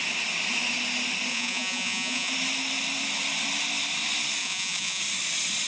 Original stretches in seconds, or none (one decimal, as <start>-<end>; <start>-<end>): 0.0-1.3; 2.3-4.4; 5.0-5.7